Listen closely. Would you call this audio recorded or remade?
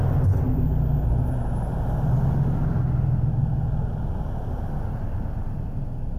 recorded